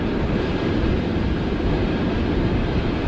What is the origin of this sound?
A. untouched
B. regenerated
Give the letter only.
A